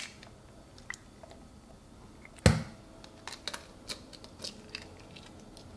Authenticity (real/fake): real